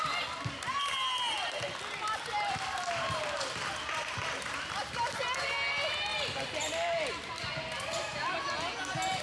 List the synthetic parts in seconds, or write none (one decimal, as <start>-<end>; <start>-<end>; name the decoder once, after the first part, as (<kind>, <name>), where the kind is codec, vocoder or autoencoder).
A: 6.1-7.1 (vocoder, BigVGAN v2)